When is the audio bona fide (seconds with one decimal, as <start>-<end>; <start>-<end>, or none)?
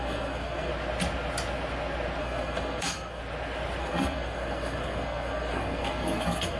0.7-2.2; 3.2-3.8